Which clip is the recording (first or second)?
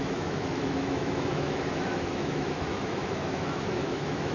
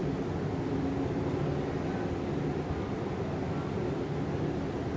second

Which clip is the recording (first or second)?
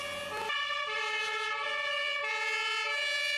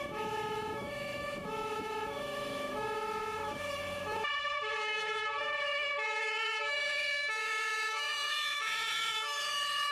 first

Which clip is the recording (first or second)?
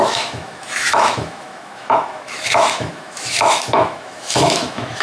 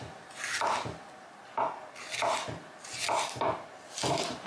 second